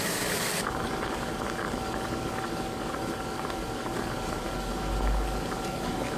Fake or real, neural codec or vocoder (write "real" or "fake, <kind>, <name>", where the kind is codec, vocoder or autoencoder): fake, codec, DAC